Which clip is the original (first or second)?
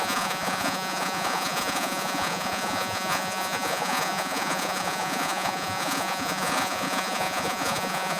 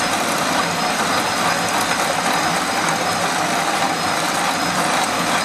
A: second